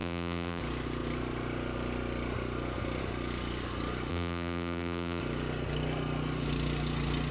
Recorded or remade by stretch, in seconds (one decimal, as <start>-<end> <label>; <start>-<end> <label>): 0.0-0.6 remade; 0.6-4.1 recorded; 4.1-5.2 remade; 5.2-7.3 recorded